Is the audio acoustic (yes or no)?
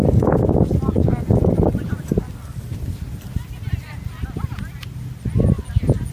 yes